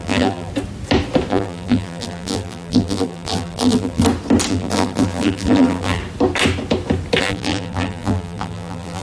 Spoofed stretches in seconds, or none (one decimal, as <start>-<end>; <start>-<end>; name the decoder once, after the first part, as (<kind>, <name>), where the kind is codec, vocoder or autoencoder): 0.0-0.5 (vocoder, BigVGAN v2); 1.3-4.0; 4.5-6.0; 7.2-9.0

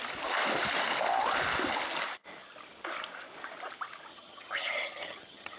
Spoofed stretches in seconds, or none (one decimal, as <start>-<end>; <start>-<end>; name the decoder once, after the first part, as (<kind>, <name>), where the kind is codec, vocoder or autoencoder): 4.1-5.6 (vocoder, HiFi-GAN)

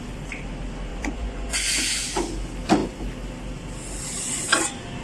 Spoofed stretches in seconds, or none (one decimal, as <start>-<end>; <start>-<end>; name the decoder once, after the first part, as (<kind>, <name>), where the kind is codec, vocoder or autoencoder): 0.9-2.0 (vocoder, Vocos)

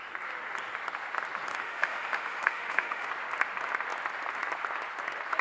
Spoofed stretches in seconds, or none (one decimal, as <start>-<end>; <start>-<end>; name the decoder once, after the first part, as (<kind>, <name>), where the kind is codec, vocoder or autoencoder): 1.5-3.1 (autoencoder, DAC-VAE)